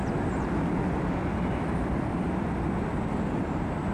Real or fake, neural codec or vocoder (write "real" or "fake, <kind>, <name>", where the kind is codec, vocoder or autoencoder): real